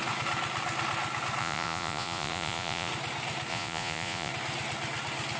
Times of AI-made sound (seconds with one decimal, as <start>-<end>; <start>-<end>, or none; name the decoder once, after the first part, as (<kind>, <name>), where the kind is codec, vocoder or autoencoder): 1.4-2.9 (vocoder, Vocos); 3.5-4.3